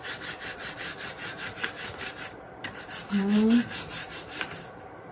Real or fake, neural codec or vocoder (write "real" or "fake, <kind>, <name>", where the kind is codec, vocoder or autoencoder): fake, vocoder, BigVGAN v2